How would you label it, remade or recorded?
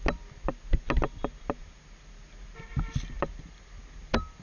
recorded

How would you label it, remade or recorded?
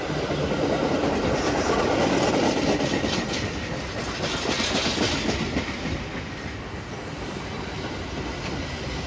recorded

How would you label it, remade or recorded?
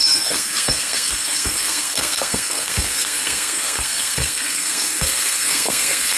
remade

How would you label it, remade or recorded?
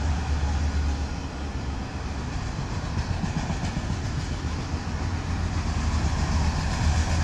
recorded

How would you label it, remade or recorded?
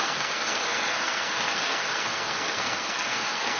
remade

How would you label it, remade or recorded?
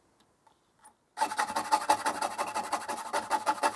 recorded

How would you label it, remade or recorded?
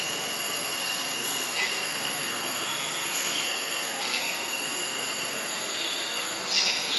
remade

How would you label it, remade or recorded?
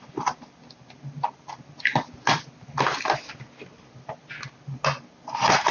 recorded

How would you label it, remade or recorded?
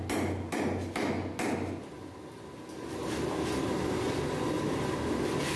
recorded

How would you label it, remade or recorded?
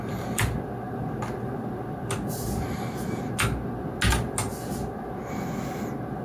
recorded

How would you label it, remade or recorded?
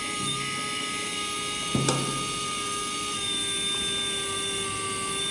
recorded